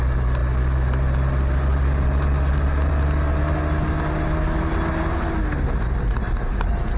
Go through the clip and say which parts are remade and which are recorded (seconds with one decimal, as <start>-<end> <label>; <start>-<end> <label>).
0.0-7.0 recorded